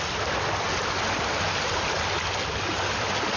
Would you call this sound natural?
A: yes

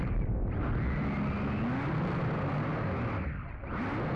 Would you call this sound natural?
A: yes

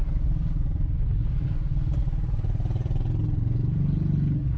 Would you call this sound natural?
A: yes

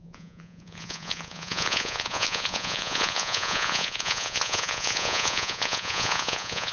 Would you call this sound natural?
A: no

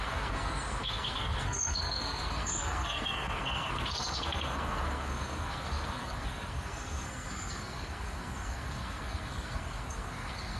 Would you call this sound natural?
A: no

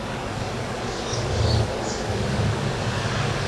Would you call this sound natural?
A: no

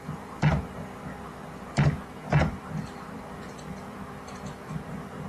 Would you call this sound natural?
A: no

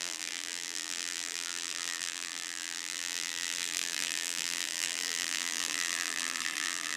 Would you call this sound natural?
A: no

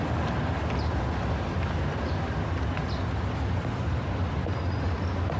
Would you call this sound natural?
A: yes